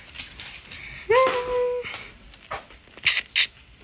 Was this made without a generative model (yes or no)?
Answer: yes